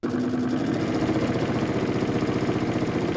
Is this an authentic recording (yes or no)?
yes